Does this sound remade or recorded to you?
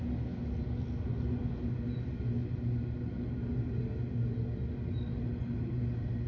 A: recorded